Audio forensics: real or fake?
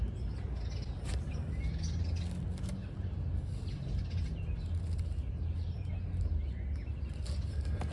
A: real